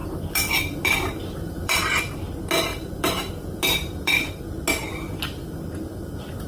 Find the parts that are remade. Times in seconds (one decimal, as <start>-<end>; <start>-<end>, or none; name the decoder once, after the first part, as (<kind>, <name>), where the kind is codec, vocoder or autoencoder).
0.0-1.9 (vocoder, BigVGAN v2); 2.7-4.3